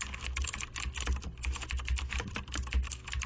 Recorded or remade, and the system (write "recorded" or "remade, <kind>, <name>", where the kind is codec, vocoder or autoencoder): recorded